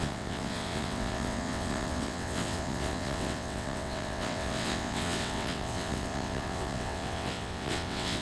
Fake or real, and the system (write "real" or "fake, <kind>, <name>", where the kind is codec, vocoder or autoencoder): fake, vocoder, WaveNeXt